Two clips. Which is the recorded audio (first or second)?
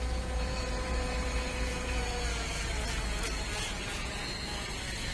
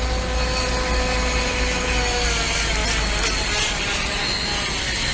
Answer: second